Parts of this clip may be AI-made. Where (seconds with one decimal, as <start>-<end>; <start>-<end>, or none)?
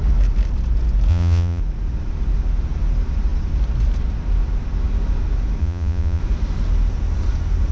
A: 1.1-1.6; 5.6-6.2